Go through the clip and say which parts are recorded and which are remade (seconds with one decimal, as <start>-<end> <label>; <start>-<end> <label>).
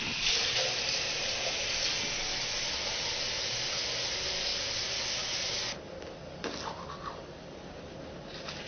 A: 0.0-8.7 recorded